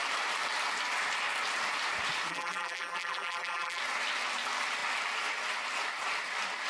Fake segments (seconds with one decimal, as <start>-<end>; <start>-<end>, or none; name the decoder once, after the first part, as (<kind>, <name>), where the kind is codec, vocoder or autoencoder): 2.3-3.8 (vocoder, BigVGAN v2)